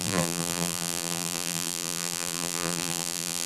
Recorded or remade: remade